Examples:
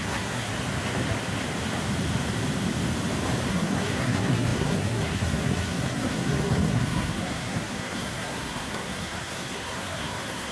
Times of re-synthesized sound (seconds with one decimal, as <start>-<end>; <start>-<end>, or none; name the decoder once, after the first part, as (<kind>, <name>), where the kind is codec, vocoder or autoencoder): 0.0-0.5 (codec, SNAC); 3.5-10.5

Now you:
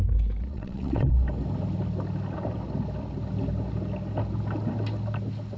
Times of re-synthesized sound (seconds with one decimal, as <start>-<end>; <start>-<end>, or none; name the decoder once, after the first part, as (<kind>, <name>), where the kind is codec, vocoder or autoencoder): 0.5-1.1 (vocoder, WaveNeXt)

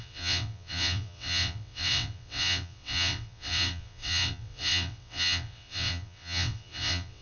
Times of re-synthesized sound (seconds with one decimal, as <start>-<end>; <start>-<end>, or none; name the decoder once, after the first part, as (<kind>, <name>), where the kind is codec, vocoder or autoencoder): 0.0-7.2 (vocoder, WaveNeXt)

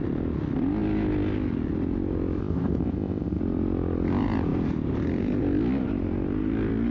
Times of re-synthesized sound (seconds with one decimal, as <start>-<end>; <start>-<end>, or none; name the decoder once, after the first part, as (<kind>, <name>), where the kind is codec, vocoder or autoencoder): 2.4-3.4 (codec, ZipCodec)